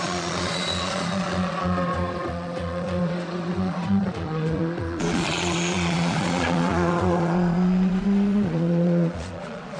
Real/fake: fake